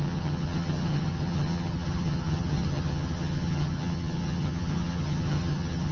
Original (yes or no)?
no